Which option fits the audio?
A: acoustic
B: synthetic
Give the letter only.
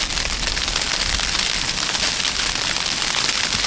A